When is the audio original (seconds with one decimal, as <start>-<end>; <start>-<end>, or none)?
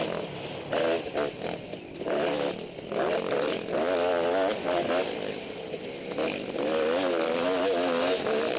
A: 0.0-8.6